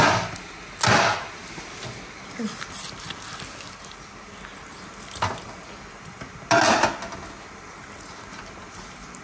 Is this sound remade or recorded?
recorded